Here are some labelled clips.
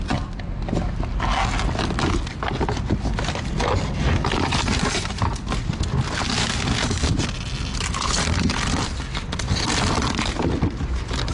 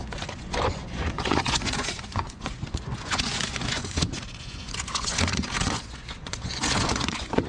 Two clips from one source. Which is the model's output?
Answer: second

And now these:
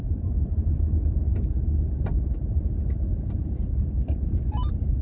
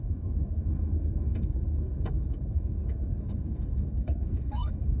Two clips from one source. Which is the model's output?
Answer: second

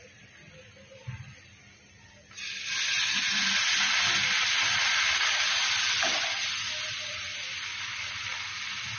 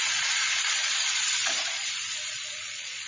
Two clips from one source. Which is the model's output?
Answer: second